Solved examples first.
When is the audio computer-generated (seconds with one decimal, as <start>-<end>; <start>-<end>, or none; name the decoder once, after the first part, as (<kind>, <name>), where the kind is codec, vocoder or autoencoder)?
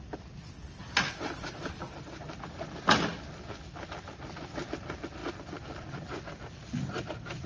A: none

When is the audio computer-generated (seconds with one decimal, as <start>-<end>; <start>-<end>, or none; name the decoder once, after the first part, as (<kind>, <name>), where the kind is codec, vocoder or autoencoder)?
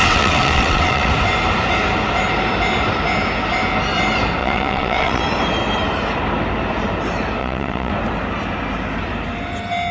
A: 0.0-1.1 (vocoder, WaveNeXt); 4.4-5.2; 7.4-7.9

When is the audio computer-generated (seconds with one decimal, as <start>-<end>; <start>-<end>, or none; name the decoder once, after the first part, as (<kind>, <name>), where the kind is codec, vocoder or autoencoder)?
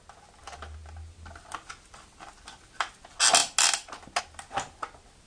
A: none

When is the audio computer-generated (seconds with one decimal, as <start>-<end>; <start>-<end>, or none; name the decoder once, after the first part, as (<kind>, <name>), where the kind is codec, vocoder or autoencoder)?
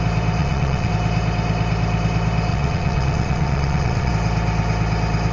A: 0.4-0.9 (vocoder, WaveNeXt); 2.5-4.1